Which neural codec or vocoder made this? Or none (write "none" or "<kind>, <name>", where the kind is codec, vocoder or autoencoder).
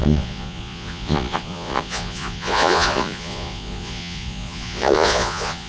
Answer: vocoder, Vocos